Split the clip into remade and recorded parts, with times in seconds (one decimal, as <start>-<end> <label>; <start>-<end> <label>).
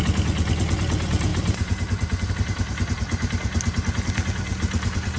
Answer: 0.0-1.3 recorded; 1.3-2.3 remade; 2.3-5.2 recorded